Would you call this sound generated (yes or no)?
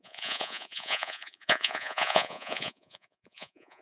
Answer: yes